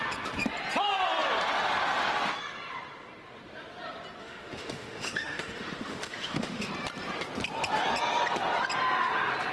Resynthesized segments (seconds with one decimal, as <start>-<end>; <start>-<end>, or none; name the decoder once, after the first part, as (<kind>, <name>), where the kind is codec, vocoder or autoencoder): 4.2-6.7 (autoencoder, DAC-VAE)